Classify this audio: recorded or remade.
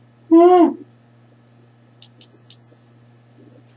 recorded